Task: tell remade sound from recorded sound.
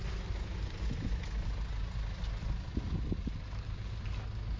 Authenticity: recorded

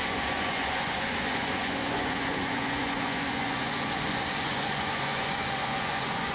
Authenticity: remade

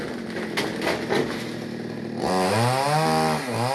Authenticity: recorded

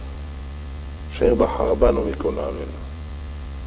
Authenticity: remade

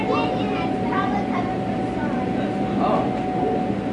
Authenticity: recorded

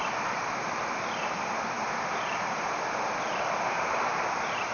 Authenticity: recorded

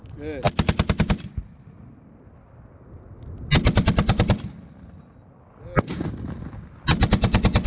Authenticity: recorded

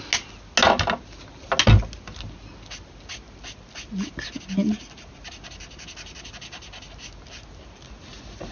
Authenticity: recorded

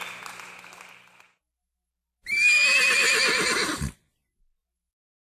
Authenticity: recorded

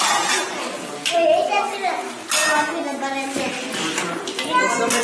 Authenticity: recorded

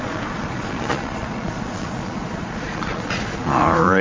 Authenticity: remade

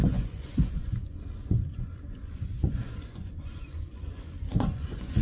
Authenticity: remade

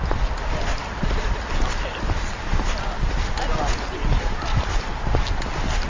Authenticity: recorded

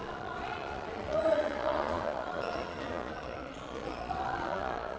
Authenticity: remade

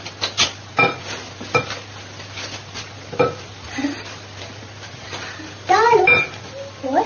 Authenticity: recorded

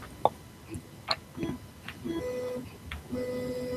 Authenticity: recorded